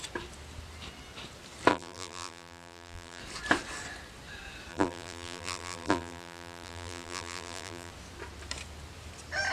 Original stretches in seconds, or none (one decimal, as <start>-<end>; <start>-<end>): 0.0-1.7; 3.2-4.7; 7.9-9.5